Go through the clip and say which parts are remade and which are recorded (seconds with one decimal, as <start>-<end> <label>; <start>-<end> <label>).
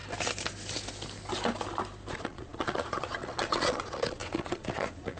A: 0.0-2.1 recorded; 2.1-5.2 remade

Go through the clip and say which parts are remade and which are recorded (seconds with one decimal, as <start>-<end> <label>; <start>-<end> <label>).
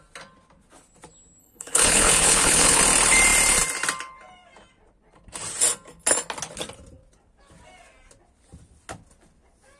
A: 0.0-1.4 recorded; 1.4-2.8 remade; 2.8-9.8 recorded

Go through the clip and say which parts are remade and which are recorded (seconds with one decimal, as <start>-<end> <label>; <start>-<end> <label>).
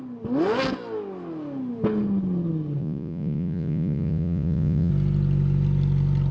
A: 0.0-2.8 recorded; 2.8-4.9 remade; 4.9-6.3 recorded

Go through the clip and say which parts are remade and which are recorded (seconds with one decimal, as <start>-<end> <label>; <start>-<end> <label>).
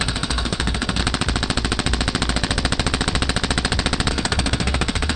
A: 0.0-1.0 remade; 1.0-4.1 recorded; 4.1-5.2 remade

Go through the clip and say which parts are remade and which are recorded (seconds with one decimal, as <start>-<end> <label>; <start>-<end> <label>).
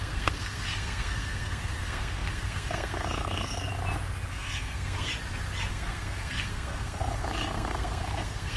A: 0.0-3.7 remade; 3.7-4.3 recorded; 4.3-5.1 remade; 5.1-5.7 recorded; 5.7-8.6 remade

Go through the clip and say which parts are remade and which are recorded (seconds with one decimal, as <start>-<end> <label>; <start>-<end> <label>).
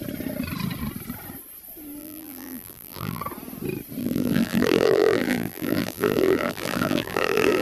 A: 0.0-2.0 recorded; 2.0-3.2 remade; 3.2-4.0 recorded; 4.0-7.6 remade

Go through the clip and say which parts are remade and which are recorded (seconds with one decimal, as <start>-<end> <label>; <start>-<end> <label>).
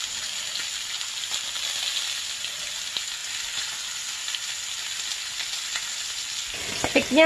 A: 0.0-7.3 recorded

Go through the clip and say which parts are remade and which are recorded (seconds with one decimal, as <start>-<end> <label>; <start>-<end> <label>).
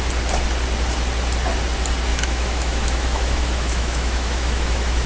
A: 0.0-2.1 recorded; 2.1-5.1 remade